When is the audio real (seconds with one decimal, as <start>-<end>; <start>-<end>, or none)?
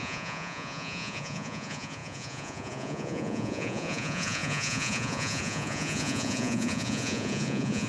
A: none